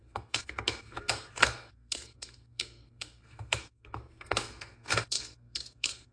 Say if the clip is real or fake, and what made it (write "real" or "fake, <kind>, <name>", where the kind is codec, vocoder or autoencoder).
fake, codec, SNAC